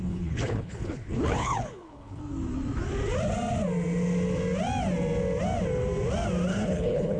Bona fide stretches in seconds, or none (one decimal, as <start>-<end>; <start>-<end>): 2.2-6.5